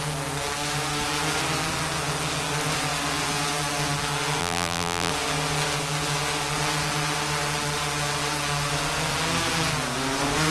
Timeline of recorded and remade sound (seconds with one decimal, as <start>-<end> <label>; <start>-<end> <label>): 0.0-4.4 recorded; 4.4-5.1 remade; 5.1-10.5 recorded